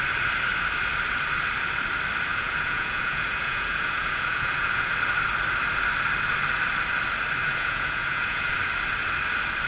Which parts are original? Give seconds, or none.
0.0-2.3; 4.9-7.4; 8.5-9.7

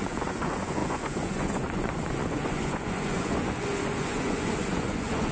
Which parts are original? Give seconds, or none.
none

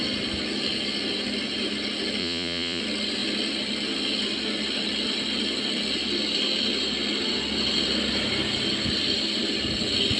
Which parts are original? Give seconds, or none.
0.0-2.2; 2.8-10.2

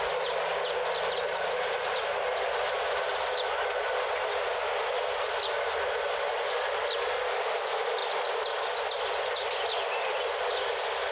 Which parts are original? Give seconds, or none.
0.0-11.1

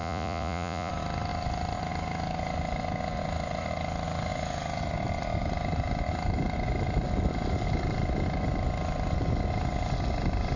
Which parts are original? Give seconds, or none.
0.9-10.6

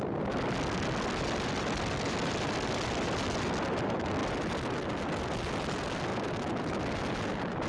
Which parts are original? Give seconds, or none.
0.0-7.7

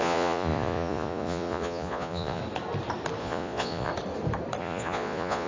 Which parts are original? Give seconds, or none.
2.4-3.2; 3.9-4.6